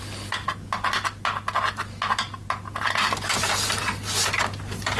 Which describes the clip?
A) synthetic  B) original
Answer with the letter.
B